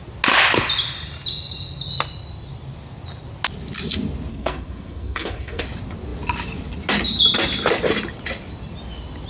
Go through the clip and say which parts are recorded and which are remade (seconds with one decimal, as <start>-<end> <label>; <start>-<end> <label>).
0.0-4.3 recorded; 4.3-5.6 remade; 5.6-9.3 recorded